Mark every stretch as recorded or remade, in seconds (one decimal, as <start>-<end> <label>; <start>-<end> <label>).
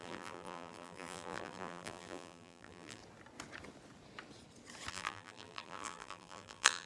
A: 0.0-3.0 remade; 3.0-4.9 recorded; 4.9-6.9 remade